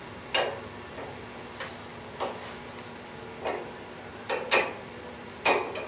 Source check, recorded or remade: recorded